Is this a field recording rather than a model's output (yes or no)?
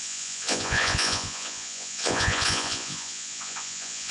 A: no